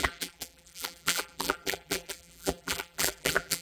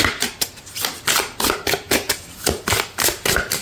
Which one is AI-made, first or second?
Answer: first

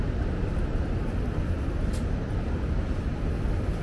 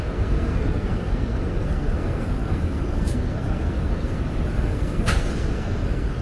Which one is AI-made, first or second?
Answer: second